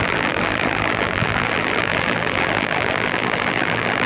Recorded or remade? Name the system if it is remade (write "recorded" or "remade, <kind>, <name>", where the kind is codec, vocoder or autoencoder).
remade, vocoder, BigVGAN v2